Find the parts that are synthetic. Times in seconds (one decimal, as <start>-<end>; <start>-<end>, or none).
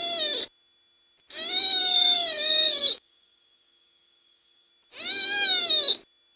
1.8-4.7